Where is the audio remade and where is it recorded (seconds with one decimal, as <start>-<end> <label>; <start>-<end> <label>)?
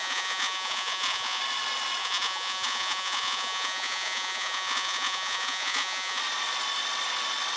0.0-1.4 remade; 1.4-2.0 recorded; 2.0-6.2 remade; 6.2-7.6 recorded